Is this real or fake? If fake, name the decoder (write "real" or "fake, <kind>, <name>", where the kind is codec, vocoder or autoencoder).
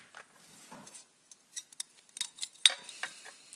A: real